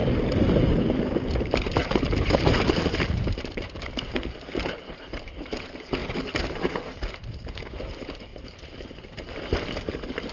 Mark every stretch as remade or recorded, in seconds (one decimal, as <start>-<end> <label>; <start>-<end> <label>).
0.0-1.0 remade; 1.0-1.8 recorded; 1.8-5.3 remade; 5.3-8.3 recorded; 8.3-9.4 remade; 9.4-10.3 recorded